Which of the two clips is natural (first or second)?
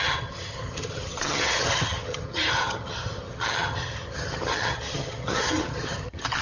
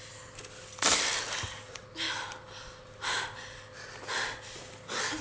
second